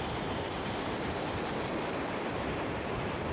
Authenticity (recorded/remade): remade